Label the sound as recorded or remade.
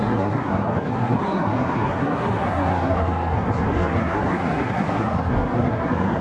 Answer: remade